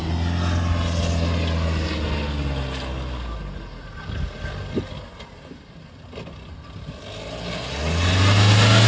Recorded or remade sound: recorded